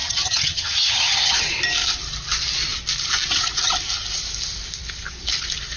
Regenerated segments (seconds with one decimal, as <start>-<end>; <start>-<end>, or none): 0.0-1.5